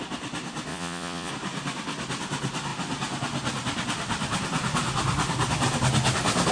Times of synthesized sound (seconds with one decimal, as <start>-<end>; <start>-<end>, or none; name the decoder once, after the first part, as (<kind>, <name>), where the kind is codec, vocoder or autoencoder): 0.7-1.3 (vocoder, Vocos)